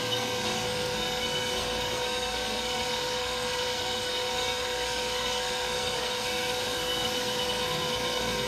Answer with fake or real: fake